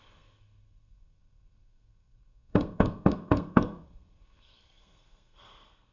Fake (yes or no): yes